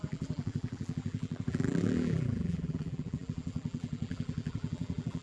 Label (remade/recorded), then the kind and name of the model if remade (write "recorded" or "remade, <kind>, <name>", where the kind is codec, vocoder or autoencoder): remade, vocoder, BigVGAN v2